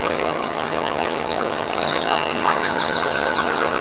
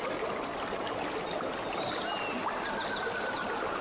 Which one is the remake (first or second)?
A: first